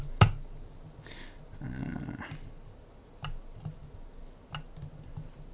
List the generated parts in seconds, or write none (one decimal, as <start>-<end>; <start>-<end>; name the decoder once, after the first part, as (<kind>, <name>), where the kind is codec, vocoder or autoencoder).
none